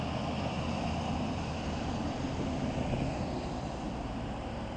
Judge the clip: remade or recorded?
recorded